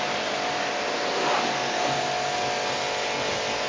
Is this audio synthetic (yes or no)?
no